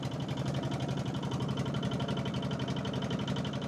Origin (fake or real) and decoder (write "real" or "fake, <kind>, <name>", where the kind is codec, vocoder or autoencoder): real